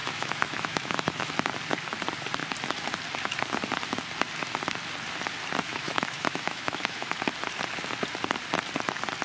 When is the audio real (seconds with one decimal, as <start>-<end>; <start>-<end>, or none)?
1.3-5.7; 7.2-9.2